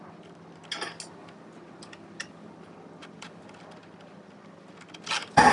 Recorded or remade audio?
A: recorded